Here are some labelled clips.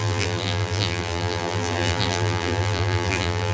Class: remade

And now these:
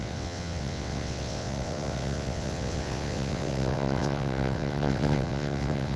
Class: remade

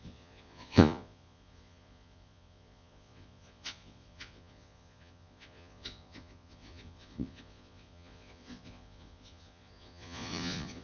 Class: remade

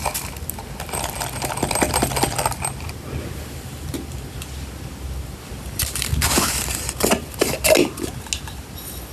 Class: recorded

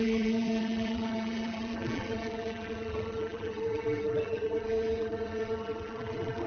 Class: remade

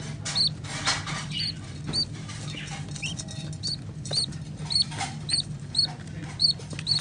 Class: recorded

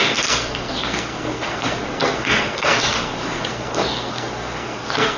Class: remade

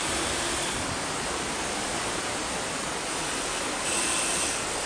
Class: recorded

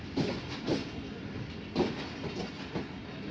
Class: recorded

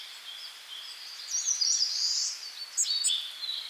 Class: recorded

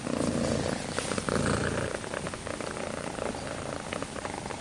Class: recorded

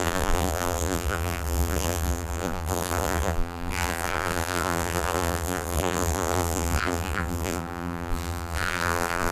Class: remade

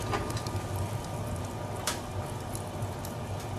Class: recorded